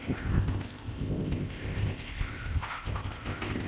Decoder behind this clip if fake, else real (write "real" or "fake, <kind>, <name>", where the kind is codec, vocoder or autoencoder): fake, codec, ZipCodec